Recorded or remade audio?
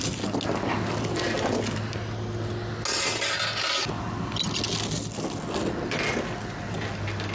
recorded